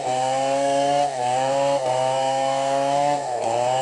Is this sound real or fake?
fake